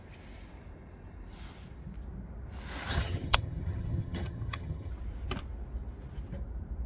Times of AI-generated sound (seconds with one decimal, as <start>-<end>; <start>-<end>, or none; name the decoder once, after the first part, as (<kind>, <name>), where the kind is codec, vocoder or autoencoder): 2.9-4.9 (vocoder, HiFi-GAN)